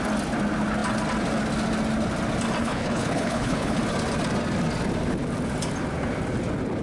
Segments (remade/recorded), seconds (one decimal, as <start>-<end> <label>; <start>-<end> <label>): 0.0-2.6 recorded; 2.6-3.8 remade; 3.8-6.8 recorded